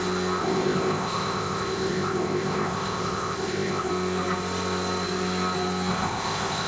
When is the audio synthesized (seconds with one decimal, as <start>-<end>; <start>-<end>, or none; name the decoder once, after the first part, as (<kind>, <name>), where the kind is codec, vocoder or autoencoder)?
0.4-3.9 (codec, ZipCodec); 5.9-6.7